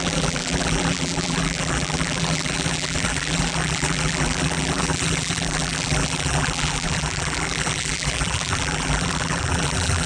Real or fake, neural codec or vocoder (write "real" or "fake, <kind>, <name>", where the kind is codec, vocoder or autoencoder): fake, vocoder, BigVGAN v2